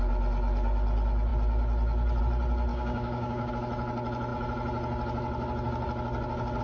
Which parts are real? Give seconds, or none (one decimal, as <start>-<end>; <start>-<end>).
0.0-2.7; 3.5-6.6